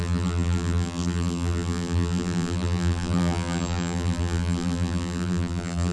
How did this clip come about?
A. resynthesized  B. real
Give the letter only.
A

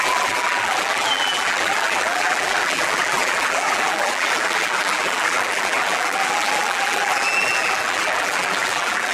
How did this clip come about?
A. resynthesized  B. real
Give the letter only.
A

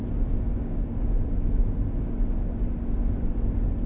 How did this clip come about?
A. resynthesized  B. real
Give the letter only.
B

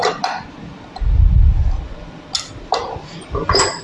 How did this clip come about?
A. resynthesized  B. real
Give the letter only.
B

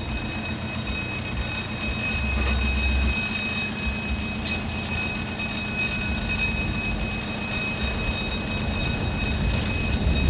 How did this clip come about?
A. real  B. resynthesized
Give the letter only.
A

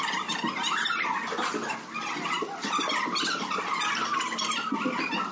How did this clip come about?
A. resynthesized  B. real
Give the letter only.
B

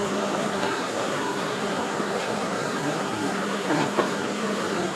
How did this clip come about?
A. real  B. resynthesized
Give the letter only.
B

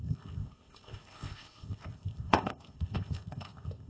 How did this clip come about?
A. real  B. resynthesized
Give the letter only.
B